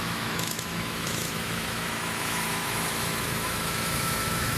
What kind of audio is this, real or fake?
fake